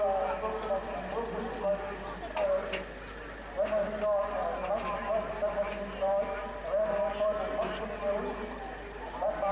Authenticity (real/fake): real